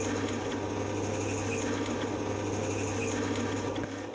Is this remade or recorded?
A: recorded